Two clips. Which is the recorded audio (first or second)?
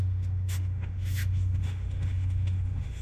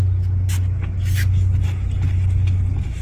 second